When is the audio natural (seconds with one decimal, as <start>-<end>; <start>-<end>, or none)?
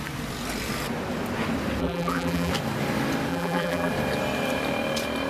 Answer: 0.0-1.8; 2.5-3.3; 3.9-5.3